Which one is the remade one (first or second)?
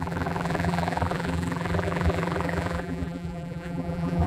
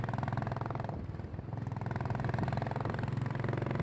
first